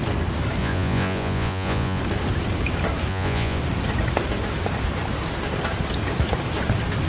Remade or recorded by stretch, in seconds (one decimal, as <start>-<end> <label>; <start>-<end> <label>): 0.0-0.6 recorded; 0.6-2.0 remade; 2.0-3.1 recorded; 3.1-3.6 remade; 3.6-7.1 recorded